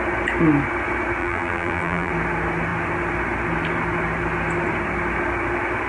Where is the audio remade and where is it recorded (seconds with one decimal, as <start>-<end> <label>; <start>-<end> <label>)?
0.0-1.2 recorded; 1.2-2.1 remade; 2.1-5.9 recorded